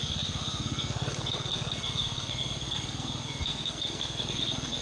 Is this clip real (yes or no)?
no